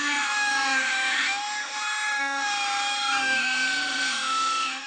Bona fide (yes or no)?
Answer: no